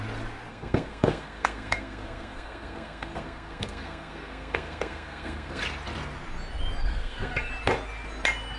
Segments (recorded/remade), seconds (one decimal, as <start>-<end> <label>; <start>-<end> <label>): 0.0-0.5 recorded; 0.5-5.6 remade; 5.6-6.8 recorded; 6.8-7.5 remade; 7.5-8.6 recorded

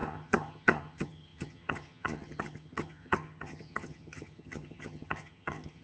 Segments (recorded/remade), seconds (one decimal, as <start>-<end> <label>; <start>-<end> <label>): 0.0-5.8 remade

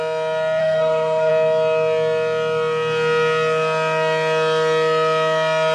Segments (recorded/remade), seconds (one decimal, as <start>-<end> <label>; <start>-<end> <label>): 0.0-0.6 recorded; 0.6-1.3 remade; 1.3-5.7 recorded

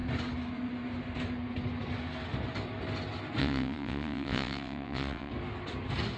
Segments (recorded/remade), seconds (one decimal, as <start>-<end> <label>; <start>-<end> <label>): 0.0-3.4 recorded; 3.4-5.3 remade; 5.3-6.2 recorded

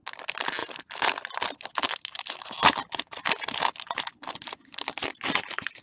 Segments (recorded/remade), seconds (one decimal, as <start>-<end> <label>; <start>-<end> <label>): 0.0-5.8 recorded